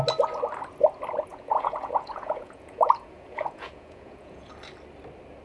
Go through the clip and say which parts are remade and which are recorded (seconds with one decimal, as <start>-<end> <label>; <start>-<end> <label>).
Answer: 0.0-1.3 recorded; 1.3-4.5 remade; 4.5-5.4 recorded